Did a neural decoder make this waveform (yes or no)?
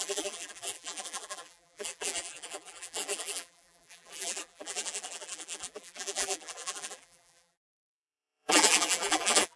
yes